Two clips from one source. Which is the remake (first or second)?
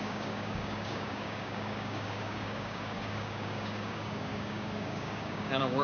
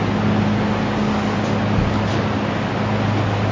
first